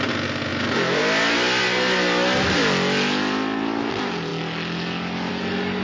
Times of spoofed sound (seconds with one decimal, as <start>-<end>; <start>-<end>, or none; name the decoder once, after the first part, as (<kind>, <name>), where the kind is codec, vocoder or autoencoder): none